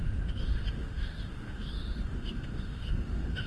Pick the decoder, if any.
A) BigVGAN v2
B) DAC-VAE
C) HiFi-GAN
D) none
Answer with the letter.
B